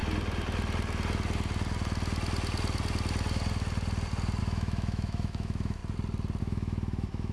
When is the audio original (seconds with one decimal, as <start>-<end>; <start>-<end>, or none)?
0.0-4.4; 5.8-6.4